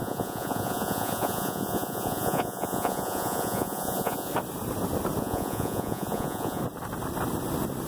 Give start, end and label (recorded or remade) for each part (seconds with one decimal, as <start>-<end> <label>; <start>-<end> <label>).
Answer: 0.0-4.3 remade; 4.3-5.2 recorded; 5.2-6.6 remade; 6.6-7.9 recorded